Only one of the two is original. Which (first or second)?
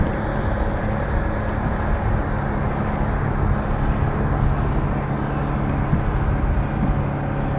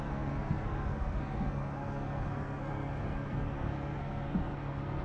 first